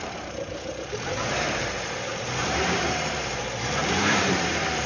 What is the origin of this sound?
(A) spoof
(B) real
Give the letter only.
A